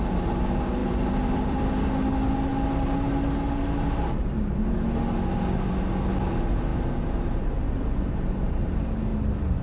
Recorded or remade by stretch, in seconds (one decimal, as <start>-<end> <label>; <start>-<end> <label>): 0.0-0.8 recorded; 0.8-1.9 remade; 1.9-9.1 recorded; 9.1-9.6 remade